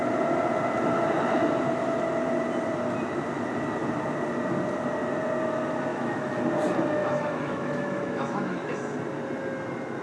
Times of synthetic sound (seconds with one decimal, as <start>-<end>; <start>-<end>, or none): 5.9-6.4; 7.0-8.7